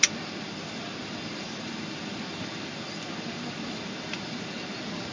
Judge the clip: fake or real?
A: real